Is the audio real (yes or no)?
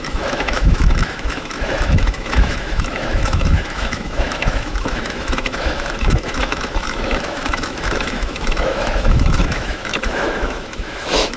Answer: no